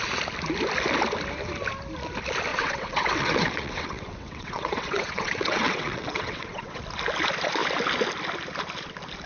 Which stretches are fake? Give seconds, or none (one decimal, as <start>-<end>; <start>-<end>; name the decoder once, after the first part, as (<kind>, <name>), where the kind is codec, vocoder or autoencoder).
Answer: 2.5-6.8 (vocoder, WaveNeXt)